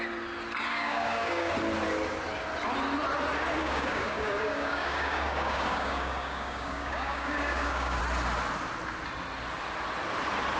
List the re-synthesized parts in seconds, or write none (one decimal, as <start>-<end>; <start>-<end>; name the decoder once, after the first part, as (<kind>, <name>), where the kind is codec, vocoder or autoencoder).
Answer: 0.7-1.5 (codec, DAC); 3.6-8.0